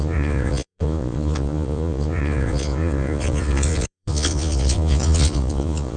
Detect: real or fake fake